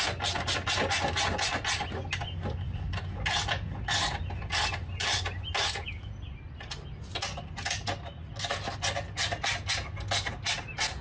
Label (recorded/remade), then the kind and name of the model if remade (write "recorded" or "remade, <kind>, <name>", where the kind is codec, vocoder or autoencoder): recorded